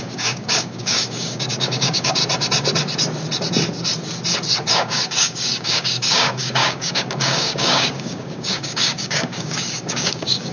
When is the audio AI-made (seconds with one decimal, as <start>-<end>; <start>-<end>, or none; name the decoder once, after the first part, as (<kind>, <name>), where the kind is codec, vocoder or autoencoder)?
0.0-2.2 (codec, DAC); 4.7-10.5